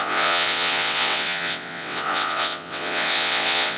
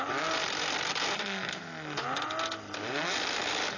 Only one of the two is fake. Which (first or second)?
first